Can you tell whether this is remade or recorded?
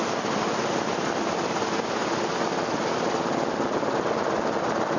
recorded